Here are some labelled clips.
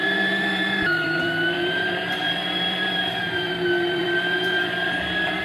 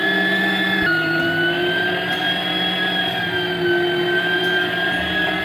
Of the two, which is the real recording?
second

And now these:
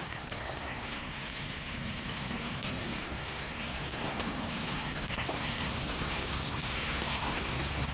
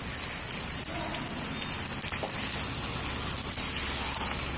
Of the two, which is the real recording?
second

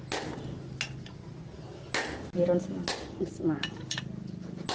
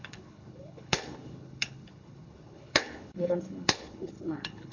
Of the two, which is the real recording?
first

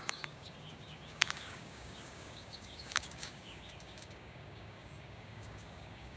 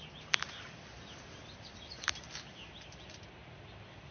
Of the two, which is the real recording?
second